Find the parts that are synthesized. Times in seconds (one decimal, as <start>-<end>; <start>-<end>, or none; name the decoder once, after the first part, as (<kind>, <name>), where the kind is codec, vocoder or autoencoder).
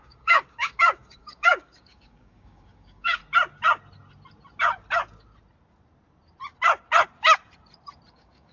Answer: 0.0-3.2 (codec, DAC); 8.1-8.5